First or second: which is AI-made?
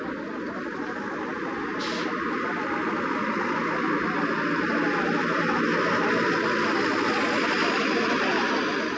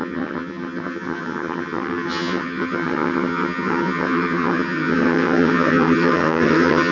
second